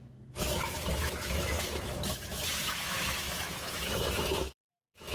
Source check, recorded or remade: remade